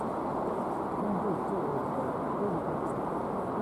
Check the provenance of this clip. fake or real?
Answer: real